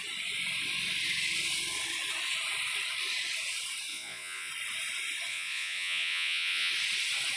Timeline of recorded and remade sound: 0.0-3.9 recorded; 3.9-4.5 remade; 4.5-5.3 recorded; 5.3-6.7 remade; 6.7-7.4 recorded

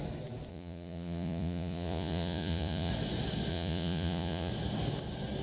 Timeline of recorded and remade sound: 0.0-0.5 recorded; 0.5-2.9 remade; 2.9-3.5 recorded; 3.5-4.5 remade; 4.5-5.4 recorded

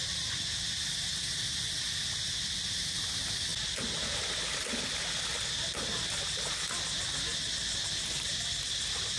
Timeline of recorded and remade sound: 0.0-9.2 recorded

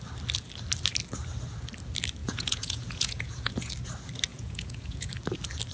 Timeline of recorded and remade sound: 0.0-2.2 recorded; 2.2-3.7 remade; 3.7-4.3 recorded; 4.3-5.1 remade; 5.1-5.7 recorded